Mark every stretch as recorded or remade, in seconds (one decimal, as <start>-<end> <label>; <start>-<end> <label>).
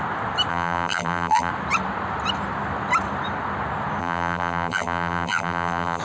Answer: 0.0-0.5 recorded; 0.5-1.5 remade; 1.5-4.0 recorded; 4.0-6.0 remade